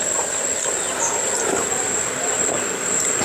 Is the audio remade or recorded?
recorded